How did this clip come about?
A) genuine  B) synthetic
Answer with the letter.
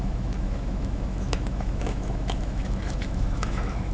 B